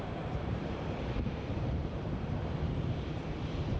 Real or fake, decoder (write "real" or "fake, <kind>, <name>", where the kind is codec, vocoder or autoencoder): fake, vocoder, BigVGAN v2